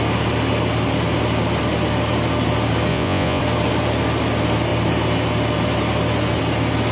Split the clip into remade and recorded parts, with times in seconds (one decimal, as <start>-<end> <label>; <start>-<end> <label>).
0.0-2.9 recorded; 2.9-3.4 remade; 3.4-6.9 recorded

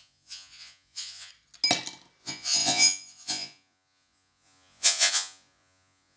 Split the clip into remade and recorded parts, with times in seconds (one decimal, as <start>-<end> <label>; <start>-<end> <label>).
0.0-1.3 remade; 1.3-2.2 recorded; 2.2-6.2 remade